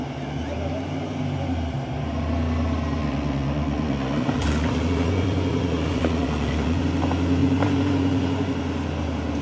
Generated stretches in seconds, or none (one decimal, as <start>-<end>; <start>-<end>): 3.0-6.8; 7.4-8.6